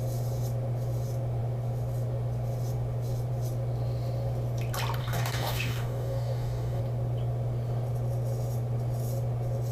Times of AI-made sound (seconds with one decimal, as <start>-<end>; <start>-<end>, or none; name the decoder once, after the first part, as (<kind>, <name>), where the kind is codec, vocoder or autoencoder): 5.0-6.8 (codec, DAC)